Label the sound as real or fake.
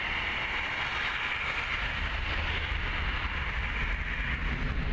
real